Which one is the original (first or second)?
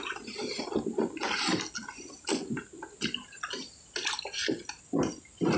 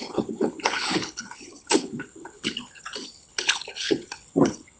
first